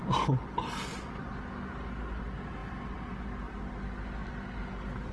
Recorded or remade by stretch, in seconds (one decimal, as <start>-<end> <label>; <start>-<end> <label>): 0.0-1.3 remade; 1.3-2.6 recorded; 2.6-3.2 remade; 3.2-5.1 recorded